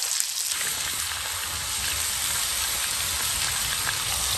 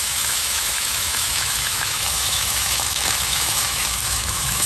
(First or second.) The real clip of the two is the first